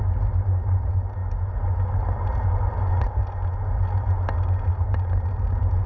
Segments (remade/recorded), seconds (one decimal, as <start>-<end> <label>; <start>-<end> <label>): 0.0-5.9 recorded